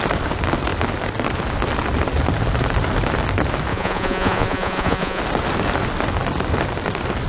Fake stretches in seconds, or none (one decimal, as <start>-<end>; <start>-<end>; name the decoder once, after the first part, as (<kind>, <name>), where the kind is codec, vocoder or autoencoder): 3.7-5.2 (vocoder, Vocos)